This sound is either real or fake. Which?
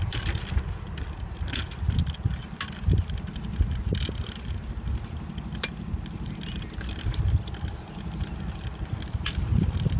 real